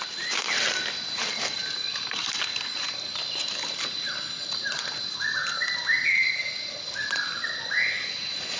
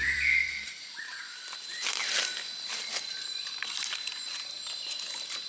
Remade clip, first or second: second